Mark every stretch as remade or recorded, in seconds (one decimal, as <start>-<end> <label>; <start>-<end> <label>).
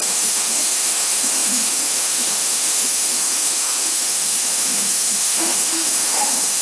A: 0.0-6.6 remade